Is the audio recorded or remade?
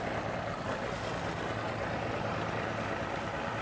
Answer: recorded